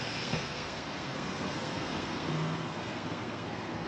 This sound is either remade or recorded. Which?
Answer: remade